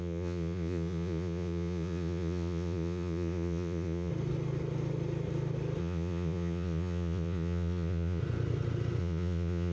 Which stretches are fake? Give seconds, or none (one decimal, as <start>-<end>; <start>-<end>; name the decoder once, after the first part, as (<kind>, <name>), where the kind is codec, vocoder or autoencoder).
0.0-4.1 (vocoder, Vocos); 5.8-8.2; 9.0-9.7